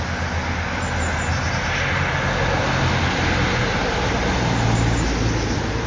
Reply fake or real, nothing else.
real